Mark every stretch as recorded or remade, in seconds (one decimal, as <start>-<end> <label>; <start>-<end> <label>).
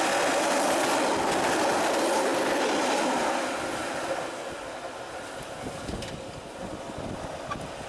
0.0-7.9 recorded